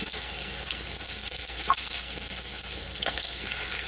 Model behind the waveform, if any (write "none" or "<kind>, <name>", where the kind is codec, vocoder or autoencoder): codec, SNAC